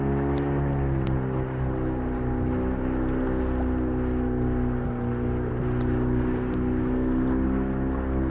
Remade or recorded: recorded